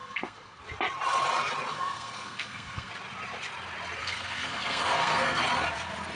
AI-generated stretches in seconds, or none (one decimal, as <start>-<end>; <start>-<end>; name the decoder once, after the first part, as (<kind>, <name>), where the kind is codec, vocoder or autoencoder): 0.0-0.6 (codec, SNAC); 1.7-2.9; 4.0-5.4